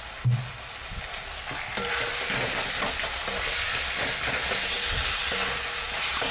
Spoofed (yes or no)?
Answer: no